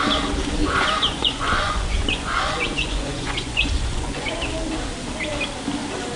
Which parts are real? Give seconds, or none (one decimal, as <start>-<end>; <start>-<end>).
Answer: 0.0-0.6; 4.3-6.2